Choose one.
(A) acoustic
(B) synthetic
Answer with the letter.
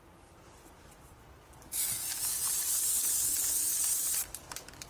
A